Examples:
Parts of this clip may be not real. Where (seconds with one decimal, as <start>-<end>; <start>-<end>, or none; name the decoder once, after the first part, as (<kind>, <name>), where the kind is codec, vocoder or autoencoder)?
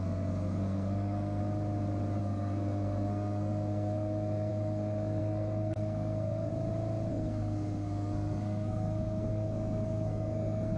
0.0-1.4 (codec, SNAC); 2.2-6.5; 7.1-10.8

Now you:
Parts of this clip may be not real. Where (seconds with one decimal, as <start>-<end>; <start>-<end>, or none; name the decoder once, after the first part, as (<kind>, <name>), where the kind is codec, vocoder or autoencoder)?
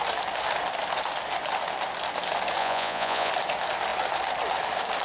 2.6-3.3 (vocoder, Vocos)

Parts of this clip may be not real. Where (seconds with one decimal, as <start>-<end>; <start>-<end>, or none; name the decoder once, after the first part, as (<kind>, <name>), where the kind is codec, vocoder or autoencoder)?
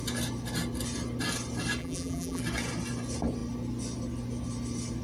1.8-2.4 (vocoder, BigVGAN v2)